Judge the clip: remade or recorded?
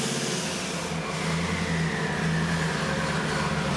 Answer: recorded